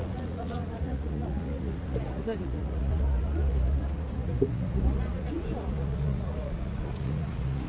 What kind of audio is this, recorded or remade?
remade